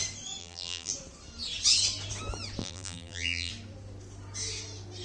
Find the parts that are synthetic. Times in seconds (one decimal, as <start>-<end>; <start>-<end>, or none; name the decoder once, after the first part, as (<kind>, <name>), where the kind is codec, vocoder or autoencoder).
0.4-0.9 (vocoder, BigVGAN v2); 2.6-3.5